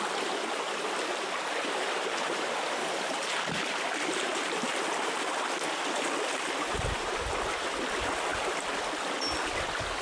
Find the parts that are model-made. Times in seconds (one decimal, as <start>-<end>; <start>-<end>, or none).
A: none